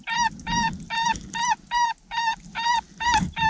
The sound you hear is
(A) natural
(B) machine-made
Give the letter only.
A